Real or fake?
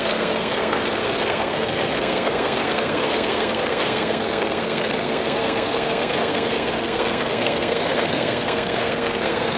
fake